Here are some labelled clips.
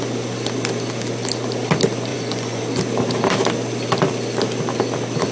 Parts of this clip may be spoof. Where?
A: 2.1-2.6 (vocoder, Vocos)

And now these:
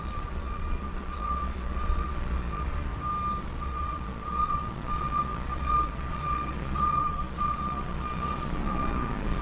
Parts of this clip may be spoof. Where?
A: 0.0-2.9 (vocoder, Vocos); 3.4-9.4